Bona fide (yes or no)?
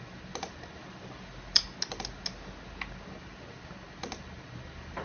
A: yes